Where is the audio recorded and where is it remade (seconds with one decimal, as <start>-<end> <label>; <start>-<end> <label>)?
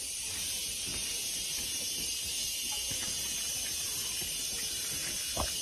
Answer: 0.0-5.6 recorded